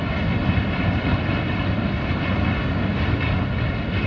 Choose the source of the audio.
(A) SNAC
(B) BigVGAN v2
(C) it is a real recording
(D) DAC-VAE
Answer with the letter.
C